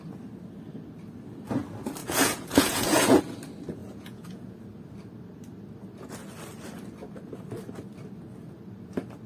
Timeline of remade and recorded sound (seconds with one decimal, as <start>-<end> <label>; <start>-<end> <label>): 0.0-2.0 recorded; 2.0-3.2 remade; 3.2-3.8 recorded; 3.8-4.6 remade; 4.6-9.3 recorded

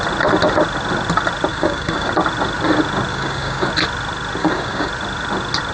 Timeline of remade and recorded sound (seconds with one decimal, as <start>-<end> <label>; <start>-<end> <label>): 0.0-1.5 recorded; 1.5-2.1 remade; 2.1-3.1 recorded; 3.1-3.7 remade; 3.7-4.4 recorded; 4.4-4.9 remade; 4.9-5.7 recorded

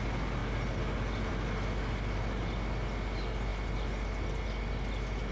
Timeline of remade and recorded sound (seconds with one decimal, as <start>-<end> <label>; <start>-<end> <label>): 0.0-5.3 recorded

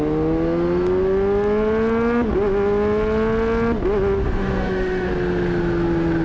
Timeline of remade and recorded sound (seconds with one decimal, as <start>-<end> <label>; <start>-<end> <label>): 0.0-4.2 recorded; 4.2-5.1 remade; 5.1-6.2 recorded

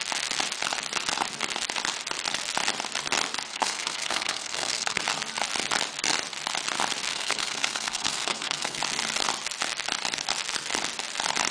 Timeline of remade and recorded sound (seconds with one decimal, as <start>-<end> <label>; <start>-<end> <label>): 0.0-3.5 recorded; 3.5-5.0 remade; 5.0-7.1 recorded; 7.1-8.8 remade; 8.8-11.5 recorded

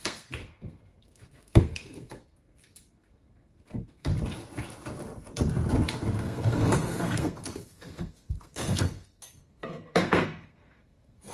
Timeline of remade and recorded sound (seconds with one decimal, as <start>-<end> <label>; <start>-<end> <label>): 0.0-4.1 remade; 4.1-6.2 recorded; 6.2-11.3 remade

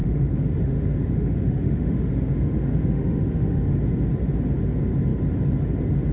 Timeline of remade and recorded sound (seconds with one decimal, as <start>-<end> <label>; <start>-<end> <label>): 0.0-3.7 remade; 3.7-6.1 recorded

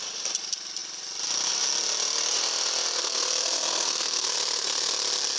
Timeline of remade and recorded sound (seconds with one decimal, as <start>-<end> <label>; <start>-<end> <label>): 0.0-3.0 recorded; 3.0-4.9 remade; 4.9-5.4 recorded